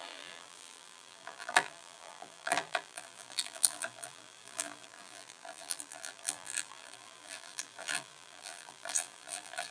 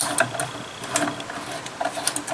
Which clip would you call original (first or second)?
second